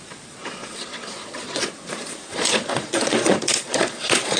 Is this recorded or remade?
remade